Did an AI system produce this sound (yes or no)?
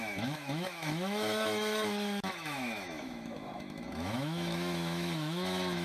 yes